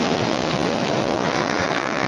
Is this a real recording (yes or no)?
no